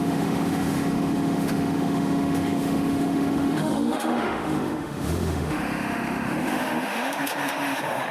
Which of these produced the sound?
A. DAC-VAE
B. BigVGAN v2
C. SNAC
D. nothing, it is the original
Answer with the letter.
A